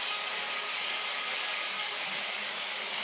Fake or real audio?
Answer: fake